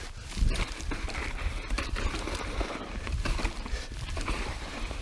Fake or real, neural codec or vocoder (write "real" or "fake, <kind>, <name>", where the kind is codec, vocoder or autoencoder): fake, vocoder, BigVGAN v2